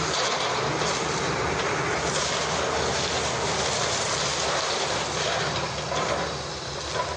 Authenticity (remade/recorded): recorded